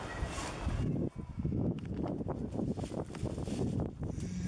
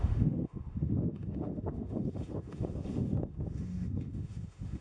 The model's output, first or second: second